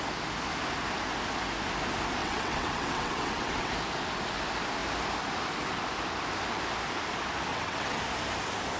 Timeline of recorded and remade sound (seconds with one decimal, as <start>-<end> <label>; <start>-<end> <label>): 0.0-2.2 recorded; 2.2-3.7 remade; 3.7-7.5 recorded; 7.5-8.0 remade; 8.0-8.8 recorded